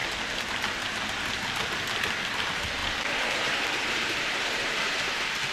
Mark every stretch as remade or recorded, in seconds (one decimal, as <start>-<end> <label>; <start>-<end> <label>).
0.0-2.8 recorded; 2.8-4.9 remade; 4.9-5.5 recorded